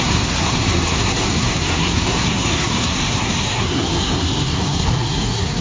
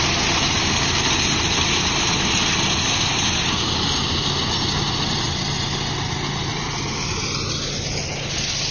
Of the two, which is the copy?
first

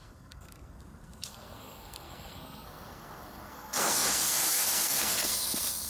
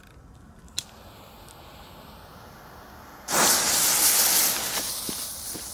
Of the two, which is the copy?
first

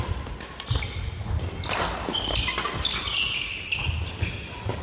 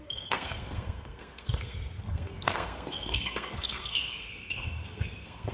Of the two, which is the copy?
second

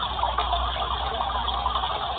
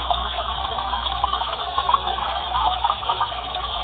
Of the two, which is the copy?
second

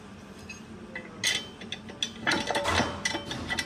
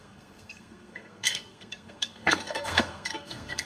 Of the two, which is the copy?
second